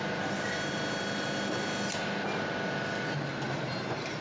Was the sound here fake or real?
real